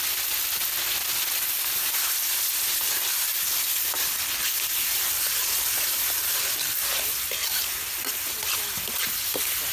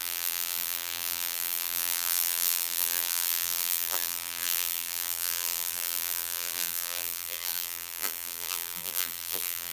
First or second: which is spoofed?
second